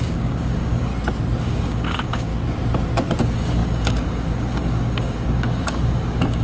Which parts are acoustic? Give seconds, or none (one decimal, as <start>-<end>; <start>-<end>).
0.9-1.4; 2.3-3.2